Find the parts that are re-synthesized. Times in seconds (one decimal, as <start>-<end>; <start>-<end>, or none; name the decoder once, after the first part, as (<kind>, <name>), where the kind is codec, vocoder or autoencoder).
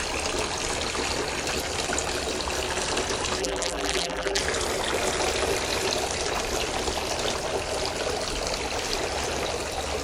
3.4-4.4 (vocoder, BigVGAN v2)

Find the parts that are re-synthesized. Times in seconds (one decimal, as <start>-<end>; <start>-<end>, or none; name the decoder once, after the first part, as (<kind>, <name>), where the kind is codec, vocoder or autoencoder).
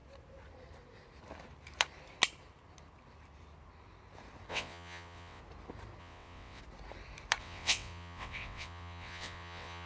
4.5-5.4 (vocoder, WaveNeXt); 6.0-6.6; 7.4-9.9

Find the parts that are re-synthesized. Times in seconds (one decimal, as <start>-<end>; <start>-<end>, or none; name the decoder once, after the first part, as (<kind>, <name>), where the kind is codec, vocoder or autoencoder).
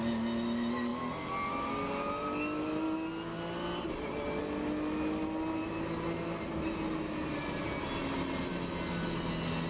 none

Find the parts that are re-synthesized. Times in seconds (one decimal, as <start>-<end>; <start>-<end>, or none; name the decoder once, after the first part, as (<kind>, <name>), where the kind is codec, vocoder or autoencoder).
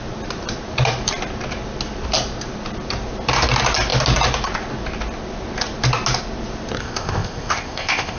6.8-8.2 (codec, ZipCodec)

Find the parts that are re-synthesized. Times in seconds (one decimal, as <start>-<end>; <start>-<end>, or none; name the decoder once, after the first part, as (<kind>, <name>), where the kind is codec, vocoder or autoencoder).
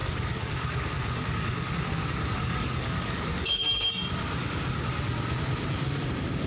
0.0-3.9 (codec, DAC); 4.4-4.9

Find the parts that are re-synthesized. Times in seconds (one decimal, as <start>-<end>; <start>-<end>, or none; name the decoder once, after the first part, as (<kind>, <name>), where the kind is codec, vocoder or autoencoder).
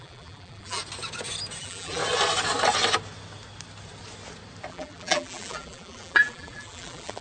0.0-0.8 (vocoder, BigVGAN v2); 1.6-2.0; 4.7-7.2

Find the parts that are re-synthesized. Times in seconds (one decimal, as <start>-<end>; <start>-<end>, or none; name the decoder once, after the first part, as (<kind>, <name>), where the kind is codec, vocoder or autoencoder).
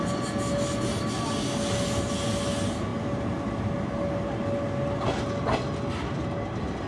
none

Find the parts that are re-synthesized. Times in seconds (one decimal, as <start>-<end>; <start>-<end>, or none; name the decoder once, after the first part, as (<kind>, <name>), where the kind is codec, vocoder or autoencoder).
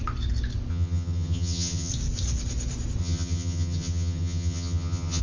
0.7-1.9 (vocoder, HiFi-GAN); 3.0-5.2